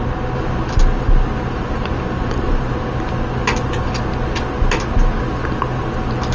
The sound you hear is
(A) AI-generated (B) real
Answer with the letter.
B